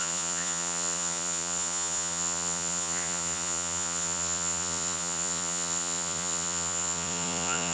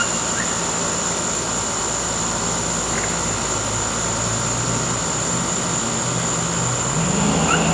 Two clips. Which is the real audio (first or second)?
second